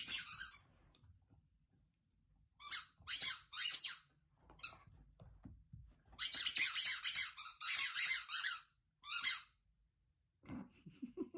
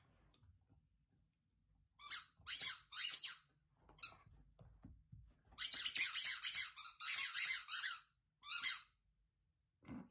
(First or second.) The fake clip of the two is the first